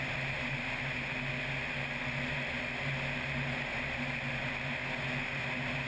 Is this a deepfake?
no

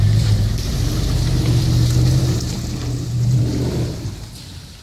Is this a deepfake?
yes